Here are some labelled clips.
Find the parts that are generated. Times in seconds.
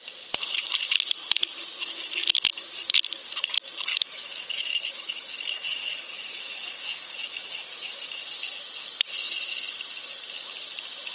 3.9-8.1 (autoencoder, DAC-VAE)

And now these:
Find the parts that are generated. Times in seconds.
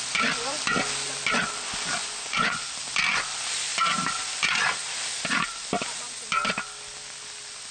2.0-2.6 (vocoder, Vocos)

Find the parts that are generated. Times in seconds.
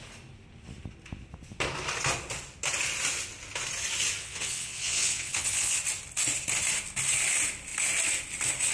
4.2-5.8 (vocoder, WaveNeXt)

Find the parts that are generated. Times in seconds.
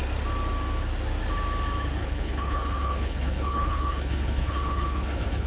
2.0-5.5 (codec, HILCodec)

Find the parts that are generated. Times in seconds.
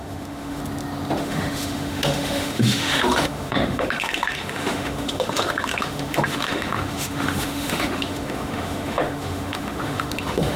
0.0-0.6 (autoencoder, DAC-VAE); 1.2-10.6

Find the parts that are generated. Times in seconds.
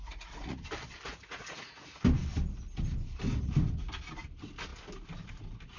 0.0-0.6 (vocoder, Vocos); 1.1-2.0